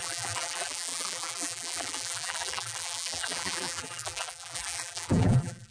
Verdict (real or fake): fake